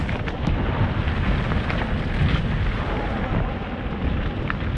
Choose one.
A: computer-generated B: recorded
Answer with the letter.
B